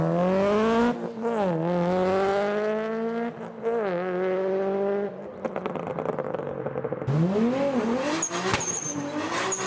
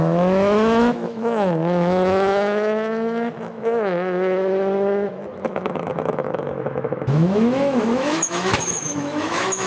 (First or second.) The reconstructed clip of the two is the second